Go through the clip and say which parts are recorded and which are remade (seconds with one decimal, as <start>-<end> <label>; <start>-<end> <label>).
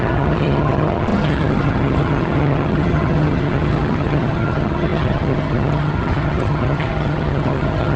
0.0-8.0 remade